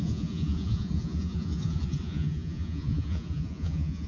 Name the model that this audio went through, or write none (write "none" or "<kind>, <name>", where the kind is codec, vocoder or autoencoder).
vocoder, Vocos